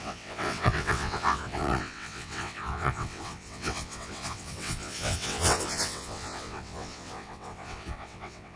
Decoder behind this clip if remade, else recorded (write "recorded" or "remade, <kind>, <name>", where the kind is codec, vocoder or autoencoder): remade, vocoder, WaveNeXt